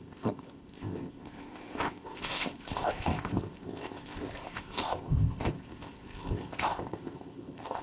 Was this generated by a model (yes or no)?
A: yes